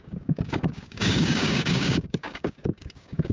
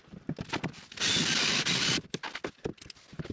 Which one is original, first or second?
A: second